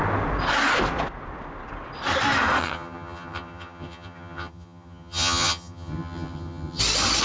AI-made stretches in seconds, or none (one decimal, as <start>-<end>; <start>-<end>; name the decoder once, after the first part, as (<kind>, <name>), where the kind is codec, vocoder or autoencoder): 2.6-6.8 (vocoder, HiFi-GAN)